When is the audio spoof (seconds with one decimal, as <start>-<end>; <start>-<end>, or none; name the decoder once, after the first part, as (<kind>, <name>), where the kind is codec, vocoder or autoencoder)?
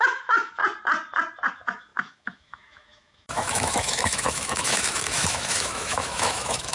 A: 0.0-0.6 (autoencoder, DAC-VAE); 1.5-6.7